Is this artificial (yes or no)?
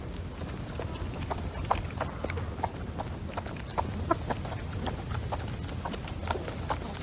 no